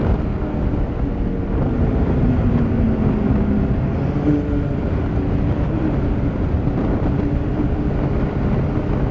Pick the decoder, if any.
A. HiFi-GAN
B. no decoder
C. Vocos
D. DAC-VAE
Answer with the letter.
B